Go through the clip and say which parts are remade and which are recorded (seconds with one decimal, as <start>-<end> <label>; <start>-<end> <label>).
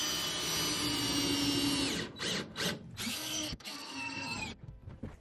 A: 0.0-3.1 recorded; 3.1-4.4 remade; 4.4-5.2 recorded